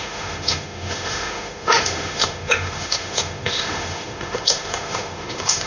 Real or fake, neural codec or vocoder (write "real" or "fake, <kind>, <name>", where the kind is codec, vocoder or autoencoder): fake, autoencoder, DAC-VAE